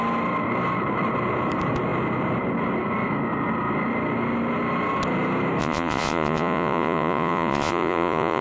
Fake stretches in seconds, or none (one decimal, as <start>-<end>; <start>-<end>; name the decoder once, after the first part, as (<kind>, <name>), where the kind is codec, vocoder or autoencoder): 5.6-8.4 (vocoder, Vocos)